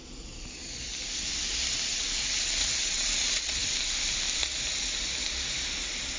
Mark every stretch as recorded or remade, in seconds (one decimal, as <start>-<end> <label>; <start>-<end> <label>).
0.0-1.9 recorded; 1.9-3.7 remade; 3.7-6.2 recorded